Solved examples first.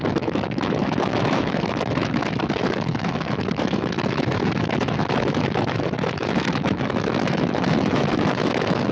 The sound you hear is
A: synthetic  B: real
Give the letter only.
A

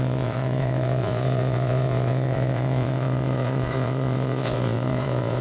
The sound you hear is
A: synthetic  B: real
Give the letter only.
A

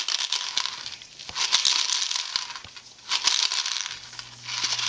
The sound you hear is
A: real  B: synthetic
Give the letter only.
A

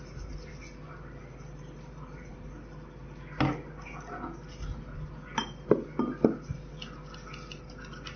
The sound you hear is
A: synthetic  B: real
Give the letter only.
B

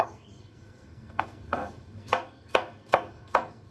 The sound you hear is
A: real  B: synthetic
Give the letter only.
B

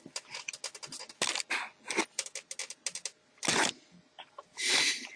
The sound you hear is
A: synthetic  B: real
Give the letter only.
B